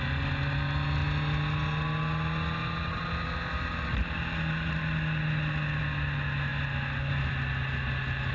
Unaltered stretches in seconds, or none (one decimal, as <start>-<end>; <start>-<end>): 0.0-8.3